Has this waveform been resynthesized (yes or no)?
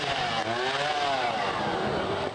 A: no